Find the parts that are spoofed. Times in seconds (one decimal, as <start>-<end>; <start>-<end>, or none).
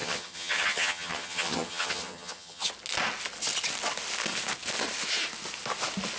0.0-2.7